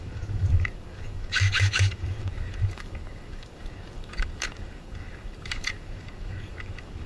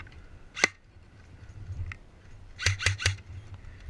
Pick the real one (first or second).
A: second